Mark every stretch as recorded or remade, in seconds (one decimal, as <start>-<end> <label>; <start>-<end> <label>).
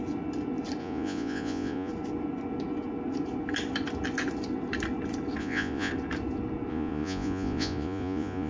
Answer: 0.0-0.8 recorded; 0.8-1.9 remade; 1.9-5.4 recorded; 5.4-5.9 remade; 5.9-6.7 recorded; 6.7-8.5 remade